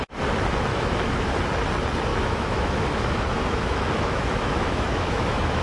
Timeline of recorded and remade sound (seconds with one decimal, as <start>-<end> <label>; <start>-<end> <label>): 0.0-0.7 recorded; 0.7-1.4 remade; 1.4-2.1 recorded; 2.1-5.6 remade